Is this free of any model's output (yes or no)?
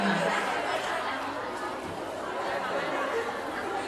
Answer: yes